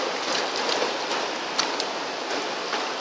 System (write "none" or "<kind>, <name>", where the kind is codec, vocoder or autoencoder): none